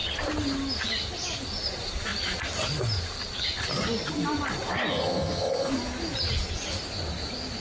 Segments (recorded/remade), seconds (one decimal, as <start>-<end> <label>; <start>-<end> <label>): 0.0-4.9 recorded; 4.9-5.7 remade; 5.7-7.6 recorded